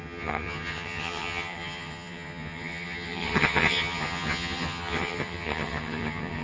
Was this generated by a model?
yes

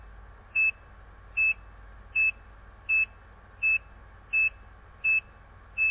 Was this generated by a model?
no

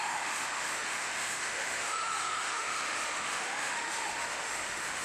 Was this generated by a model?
yes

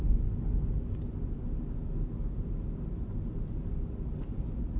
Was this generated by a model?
no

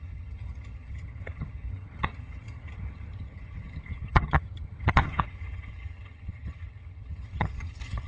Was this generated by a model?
yes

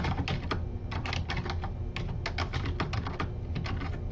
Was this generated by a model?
no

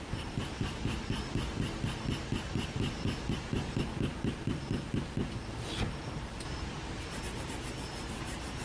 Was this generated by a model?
no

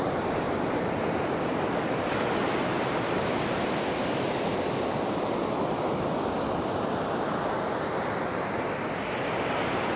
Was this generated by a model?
no